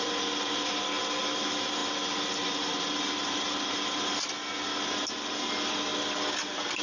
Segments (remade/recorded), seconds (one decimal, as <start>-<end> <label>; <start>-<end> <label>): 0.0-6.8 recorded